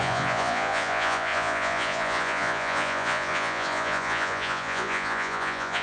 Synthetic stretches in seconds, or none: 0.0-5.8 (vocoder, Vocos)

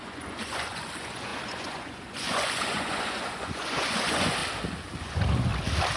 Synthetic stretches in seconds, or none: 0.0-4.4 (vocoder, Vocos); 5.0-5.5

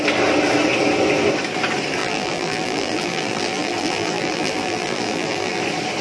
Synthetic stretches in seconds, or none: 2.0-5.6 (vocoder, BigVGAN v2)